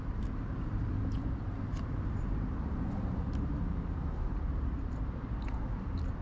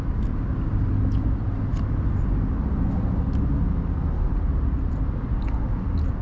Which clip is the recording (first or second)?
second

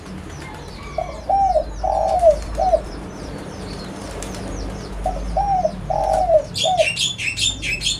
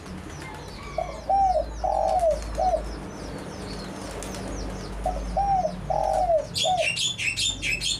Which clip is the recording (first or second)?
second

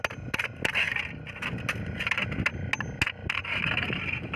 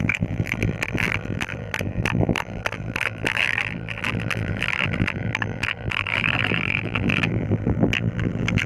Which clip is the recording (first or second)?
first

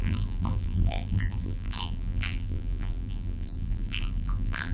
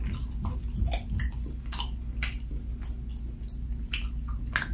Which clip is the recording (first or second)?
second